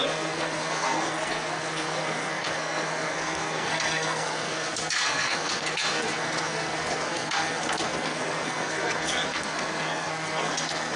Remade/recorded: remade